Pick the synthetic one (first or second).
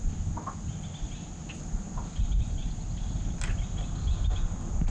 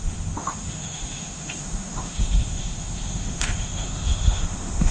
second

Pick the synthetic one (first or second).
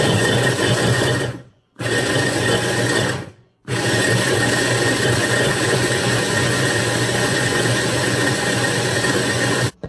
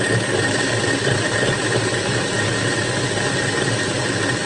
first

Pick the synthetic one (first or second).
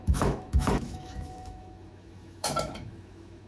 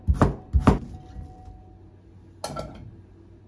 first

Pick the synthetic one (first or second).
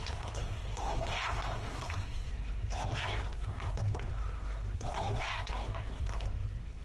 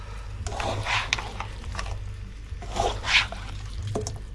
first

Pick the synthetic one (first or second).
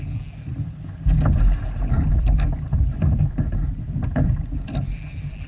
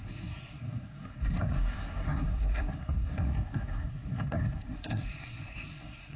second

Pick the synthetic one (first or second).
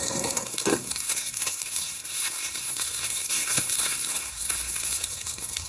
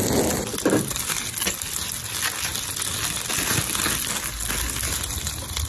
first